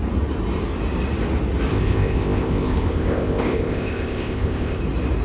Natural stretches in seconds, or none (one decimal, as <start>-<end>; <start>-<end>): 0.0-1.7; 4.8-5.2